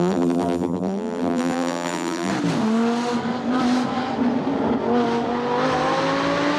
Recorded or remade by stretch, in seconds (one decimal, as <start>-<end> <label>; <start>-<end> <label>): 0.0-2.3 remade; 2.3-6.6 recorded